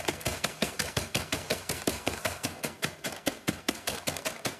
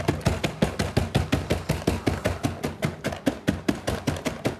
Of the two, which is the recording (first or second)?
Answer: second